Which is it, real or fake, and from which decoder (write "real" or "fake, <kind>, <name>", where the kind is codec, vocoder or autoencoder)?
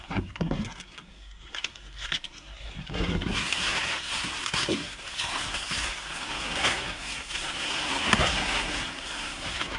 fake, codec, SNAC